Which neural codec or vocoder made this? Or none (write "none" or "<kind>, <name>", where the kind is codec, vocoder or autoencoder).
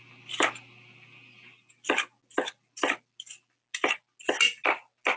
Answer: none